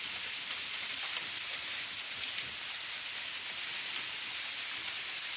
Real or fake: real